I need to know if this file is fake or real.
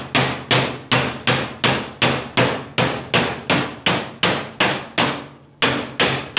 real